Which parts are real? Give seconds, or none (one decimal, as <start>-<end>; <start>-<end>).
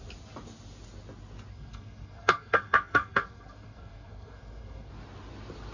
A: 0.0-1.5; 4.9-5.7